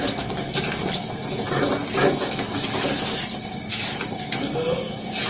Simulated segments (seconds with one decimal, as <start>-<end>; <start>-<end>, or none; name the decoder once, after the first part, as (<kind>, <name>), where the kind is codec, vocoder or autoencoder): none